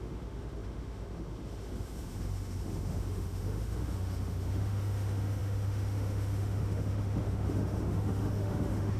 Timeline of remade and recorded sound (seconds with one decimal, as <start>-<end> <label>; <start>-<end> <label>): 0.0-9.0 remade